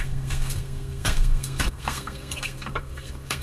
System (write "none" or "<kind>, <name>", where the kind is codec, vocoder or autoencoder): codec, SNAC